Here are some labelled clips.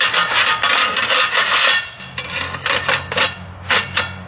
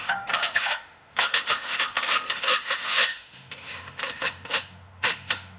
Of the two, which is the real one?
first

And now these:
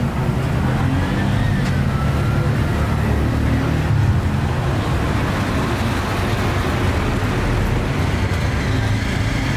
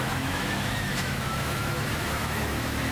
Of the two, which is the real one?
first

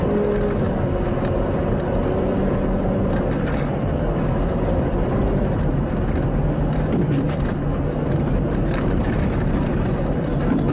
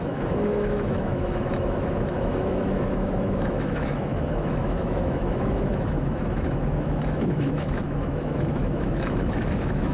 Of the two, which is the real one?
first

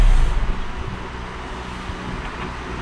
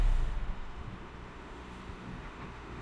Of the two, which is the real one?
first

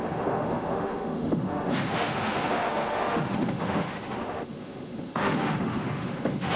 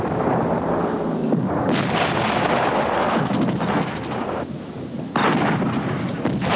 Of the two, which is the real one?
second